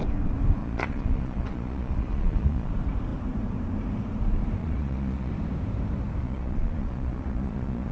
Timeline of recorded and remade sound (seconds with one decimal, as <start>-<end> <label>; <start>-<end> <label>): 0.0-0.6 recorded; 0.6-2.7 remade; 2.7-4.6 recorded; 4.6-5.3 remade; 5.3-6.2 recorded; 6.2-7.9 remade